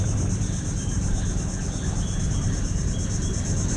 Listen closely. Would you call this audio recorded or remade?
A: recorded